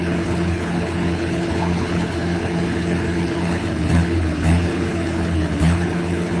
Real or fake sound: fake